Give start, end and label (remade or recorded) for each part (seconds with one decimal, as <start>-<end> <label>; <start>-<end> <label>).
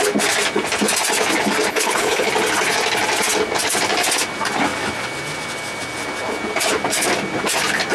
0.0-1.7 recorded; 1.7-2.3 remade; 2.3-7.9 recorded